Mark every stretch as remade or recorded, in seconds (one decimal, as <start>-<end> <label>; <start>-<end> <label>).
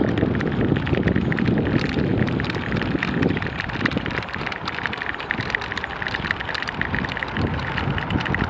0.0-2.1 recorded; 2.1-5.4 remade; 5.4-8.5 recorded